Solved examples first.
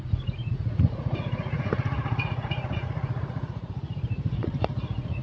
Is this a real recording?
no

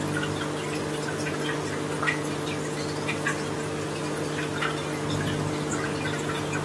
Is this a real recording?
yes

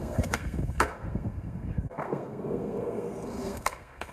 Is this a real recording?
no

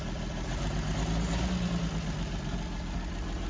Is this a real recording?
yes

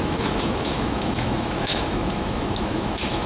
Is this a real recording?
no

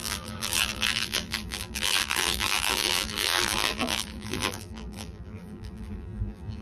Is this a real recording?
no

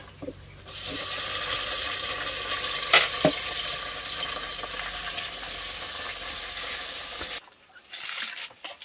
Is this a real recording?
yes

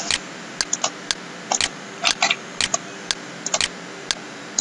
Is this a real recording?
yes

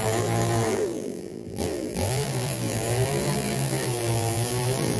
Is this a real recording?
no